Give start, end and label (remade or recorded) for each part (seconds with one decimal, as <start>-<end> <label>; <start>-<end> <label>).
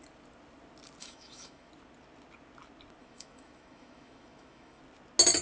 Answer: 0.0-1.0 recorded; 1.0-1.7 remade; 1.7-3.0 recorded; 3.0-4.8 remade; 4.8-5.4 recorded